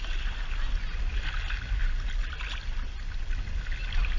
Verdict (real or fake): real